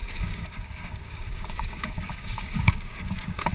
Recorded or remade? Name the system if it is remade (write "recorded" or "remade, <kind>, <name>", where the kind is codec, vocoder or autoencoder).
remade, codec, DAC